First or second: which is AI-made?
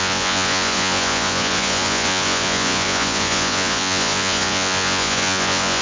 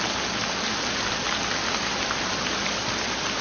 first